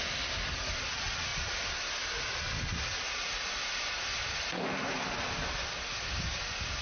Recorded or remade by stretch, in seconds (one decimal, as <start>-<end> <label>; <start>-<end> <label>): 0.0-6.8 recorded